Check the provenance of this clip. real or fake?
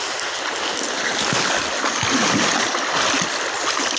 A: real